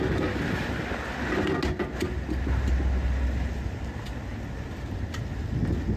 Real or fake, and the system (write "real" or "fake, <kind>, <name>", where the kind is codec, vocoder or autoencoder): real